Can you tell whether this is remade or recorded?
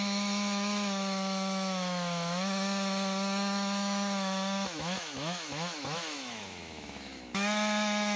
remade